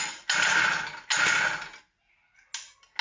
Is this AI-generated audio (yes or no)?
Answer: no